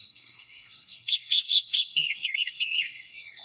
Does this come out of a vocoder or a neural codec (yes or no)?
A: yes